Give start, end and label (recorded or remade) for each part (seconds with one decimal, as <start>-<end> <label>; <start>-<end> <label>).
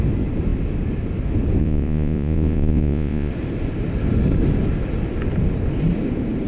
0.0-1.6 recorded; 1.6-3.3 remade; 3.3-6.5 recorded